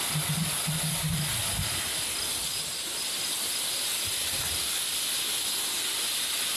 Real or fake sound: real